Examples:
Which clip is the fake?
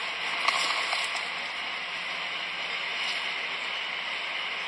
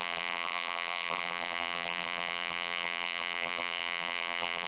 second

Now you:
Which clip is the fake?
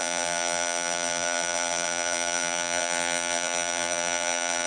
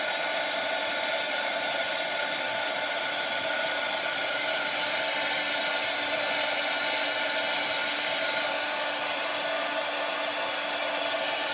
first